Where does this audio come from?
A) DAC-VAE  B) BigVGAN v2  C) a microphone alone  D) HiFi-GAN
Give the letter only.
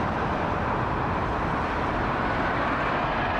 C